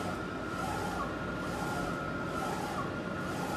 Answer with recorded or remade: recorded